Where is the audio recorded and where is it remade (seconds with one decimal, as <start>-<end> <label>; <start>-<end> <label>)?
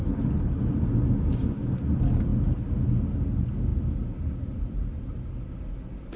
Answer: 0.0-0.6 remade; 0.6-6.2 recorded